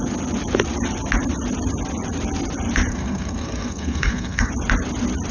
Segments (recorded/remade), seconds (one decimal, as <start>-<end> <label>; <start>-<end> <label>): 0.0-2.9 recorded; 2.9-4.5 remade; 4.5-5.3 recorded